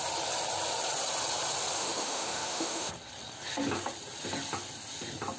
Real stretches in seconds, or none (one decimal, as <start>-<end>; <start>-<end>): 0.0-1.8; 2.9-5.4